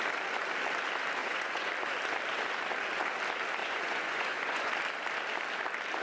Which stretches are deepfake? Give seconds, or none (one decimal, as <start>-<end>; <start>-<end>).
1.2-1.7; 3.6-4.7